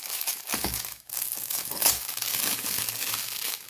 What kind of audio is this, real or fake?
fake